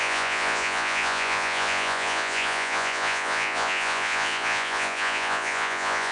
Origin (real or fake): fake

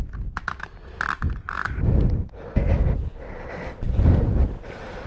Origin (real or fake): real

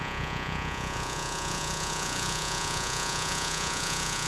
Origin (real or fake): fake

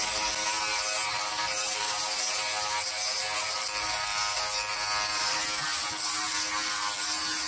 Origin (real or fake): real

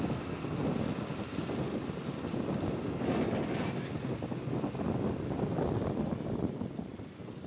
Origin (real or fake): real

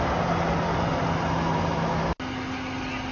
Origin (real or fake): real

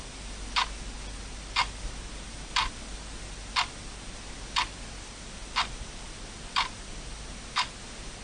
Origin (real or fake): real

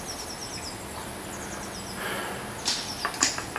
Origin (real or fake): real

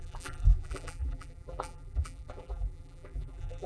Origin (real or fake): fake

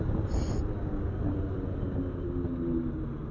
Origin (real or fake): real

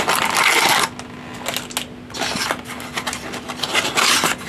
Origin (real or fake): real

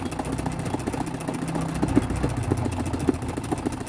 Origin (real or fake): real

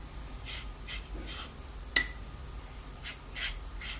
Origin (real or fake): real